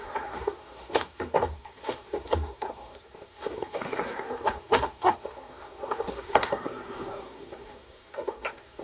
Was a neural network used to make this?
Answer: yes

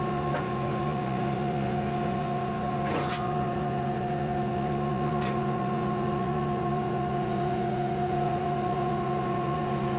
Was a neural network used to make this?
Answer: yes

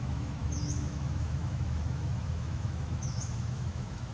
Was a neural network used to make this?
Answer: yes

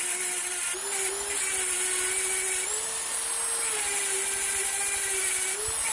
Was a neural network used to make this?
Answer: no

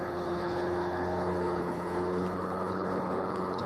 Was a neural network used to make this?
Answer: yes